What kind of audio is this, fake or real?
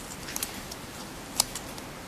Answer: fake